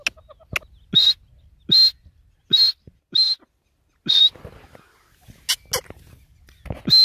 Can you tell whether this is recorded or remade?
recorded